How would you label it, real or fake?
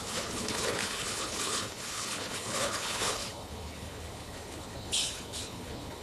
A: fake